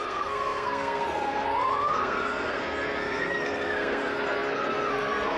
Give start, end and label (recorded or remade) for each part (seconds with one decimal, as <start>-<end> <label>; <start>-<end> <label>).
0.0-5.4 remade